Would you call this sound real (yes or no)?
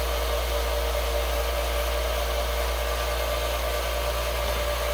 yes